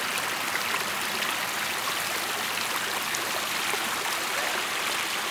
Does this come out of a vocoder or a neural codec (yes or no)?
no